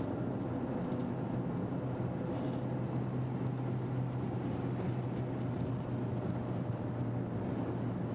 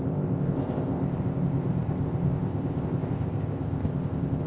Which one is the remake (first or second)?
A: second